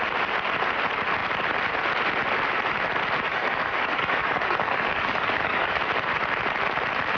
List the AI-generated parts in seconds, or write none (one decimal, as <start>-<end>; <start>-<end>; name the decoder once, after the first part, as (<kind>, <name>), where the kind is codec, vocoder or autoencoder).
3.3-5.8 (codec, DAC)